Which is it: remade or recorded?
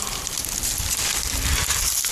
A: recorded